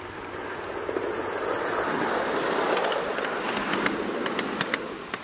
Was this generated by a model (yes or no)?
no